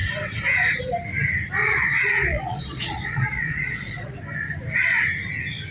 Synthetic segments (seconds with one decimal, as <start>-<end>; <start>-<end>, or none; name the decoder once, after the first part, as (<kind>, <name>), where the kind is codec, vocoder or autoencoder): 1.6-4.2 (vocoder, Vocos)